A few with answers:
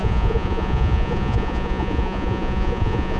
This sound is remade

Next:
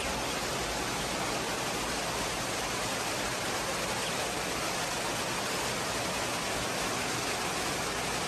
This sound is recorded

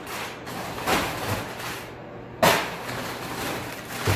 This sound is recorded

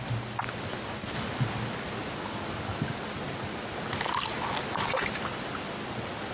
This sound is recorded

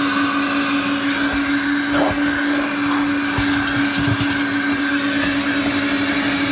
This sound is recorded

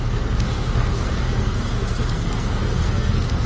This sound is remade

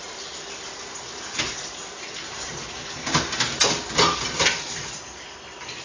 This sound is recorded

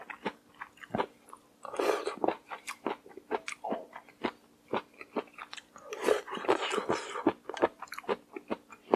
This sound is recorded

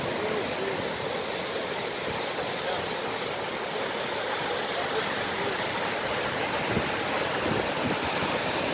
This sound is recorded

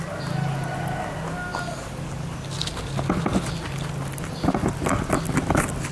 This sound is recorded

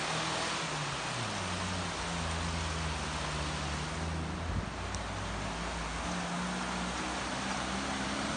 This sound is recorded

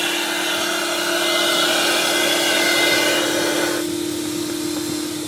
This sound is recorded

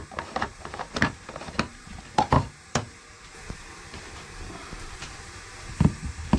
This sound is remade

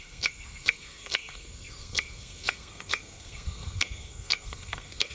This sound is remade